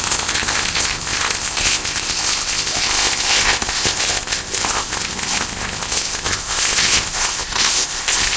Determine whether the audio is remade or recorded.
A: remade